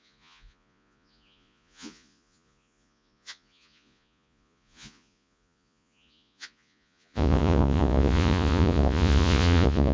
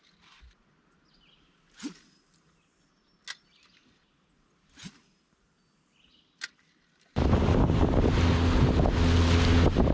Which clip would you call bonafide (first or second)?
second